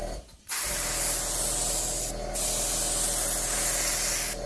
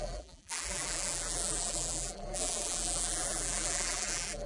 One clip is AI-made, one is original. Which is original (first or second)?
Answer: first